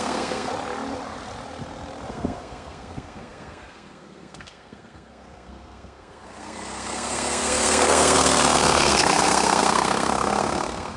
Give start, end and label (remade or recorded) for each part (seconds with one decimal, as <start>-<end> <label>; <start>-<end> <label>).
0.0-0.5 remade; 0.5-2.1 recorded; 2.1-11.0 remade

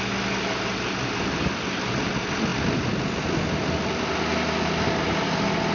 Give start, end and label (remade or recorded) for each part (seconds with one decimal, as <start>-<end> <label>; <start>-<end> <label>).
0.0-5.7 recorded

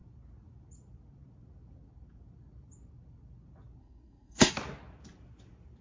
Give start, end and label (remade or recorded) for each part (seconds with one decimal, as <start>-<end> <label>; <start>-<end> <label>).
0.0-3.8 recorded; 3.8-4.5 remade; 4.5-5.8 recorded

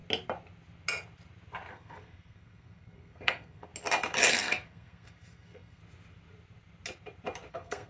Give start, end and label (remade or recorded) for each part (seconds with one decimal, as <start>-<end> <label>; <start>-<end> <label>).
0.0-1.7 recorded; 1.7-3.7 remade; 3.7-4.3 recorded; 4.3-5.8 remade; 5.8-7.5 recorded; 7.5-7.9 remade

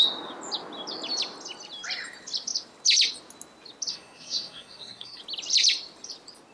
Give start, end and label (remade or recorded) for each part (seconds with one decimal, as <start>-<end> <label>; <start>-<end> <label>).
0.0-3.9 recorded; 3.9-5.2 remade; 5.2-6.5 recorded

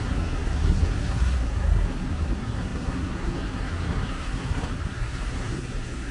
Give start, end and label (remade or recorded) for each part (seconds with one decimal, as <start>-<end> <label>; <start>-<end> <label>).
0.0-6.1 remade